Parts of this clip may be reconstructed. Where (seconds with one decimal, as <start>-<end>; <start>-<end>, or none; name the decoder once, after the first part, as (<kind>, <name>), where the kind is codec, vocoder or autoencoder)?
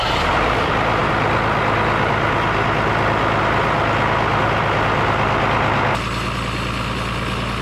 none